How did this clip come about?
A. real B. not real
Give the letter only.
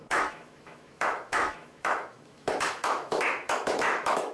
B